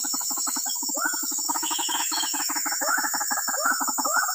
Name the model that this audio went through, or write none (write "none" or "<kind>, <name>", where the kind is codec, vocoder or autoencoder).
autoencoder, DAC-VAE